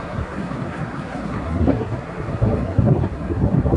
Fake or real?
fake